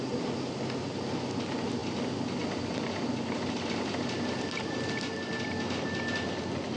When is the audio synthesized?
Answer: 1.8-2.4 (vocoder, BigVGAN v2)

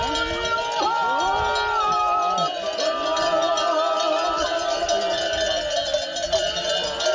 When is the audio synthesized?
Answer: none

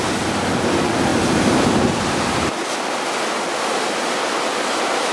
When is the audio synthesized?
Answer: 1.1-4.2 (vocoder, BigVGAN v2)

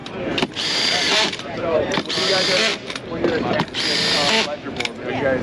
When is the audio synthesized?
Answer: 0.0-2.1 (vocoder, BigVGAN v2)

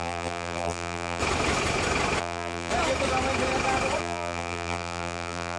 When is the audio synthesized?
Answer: 0.0-1.2 (vocoder, BigVGAN v2); 2.2-2.7; 4.0-5.6

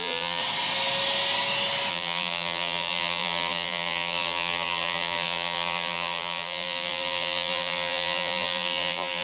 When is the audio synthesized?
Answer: 0.0-0.4 (vocoder, BigVGAN v2); 1.9-9.2

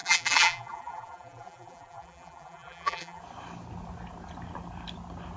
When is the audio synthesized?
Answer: 0.0-3.2 (vocoder, BigVGAN v2)